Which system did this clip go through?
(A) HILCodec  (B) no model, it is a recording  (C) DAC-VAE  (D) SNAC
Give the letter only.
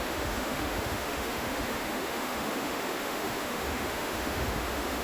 C